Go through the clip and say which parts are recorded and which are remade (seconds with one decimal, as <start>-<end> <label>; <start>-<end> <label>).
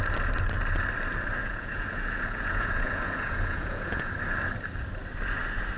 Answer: 0.0-1.4 recorded; 1.4-4.1 remade; 4.1-5.8 recorded